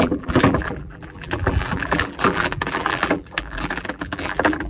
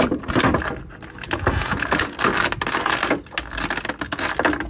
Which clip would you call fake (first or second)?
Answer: first